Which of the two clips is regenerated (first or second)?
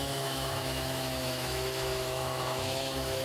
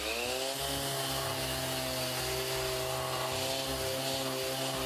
first